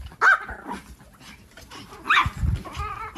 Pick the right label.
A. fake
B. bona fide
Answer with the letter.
B